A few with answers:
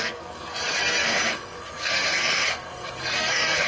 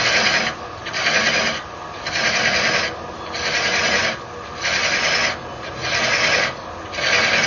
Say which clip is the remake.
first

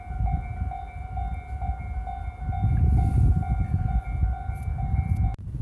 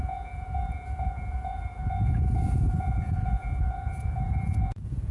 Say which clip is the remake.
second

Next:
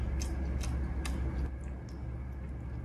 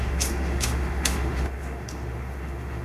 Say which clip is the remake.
second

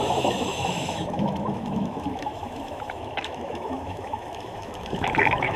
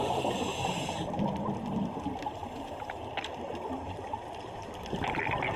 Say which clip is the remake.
first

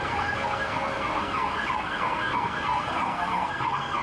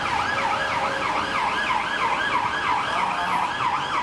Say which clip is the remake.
first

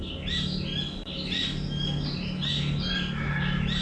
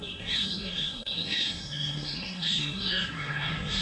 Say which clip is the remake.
second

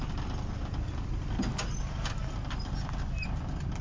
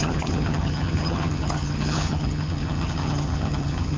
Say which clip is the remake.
second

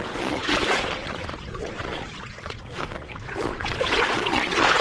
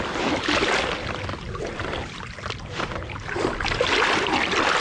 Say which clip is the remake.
first